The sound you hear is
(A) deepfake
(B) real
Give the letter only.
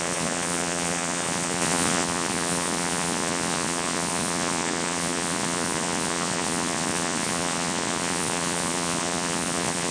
A